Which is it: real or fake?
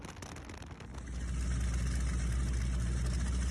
real